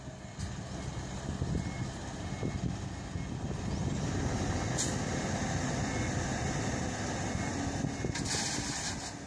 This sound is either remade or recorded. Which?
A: recorded